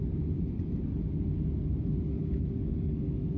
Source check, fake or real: real